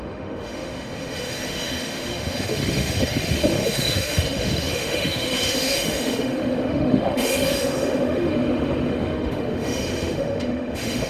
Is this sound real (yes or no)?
no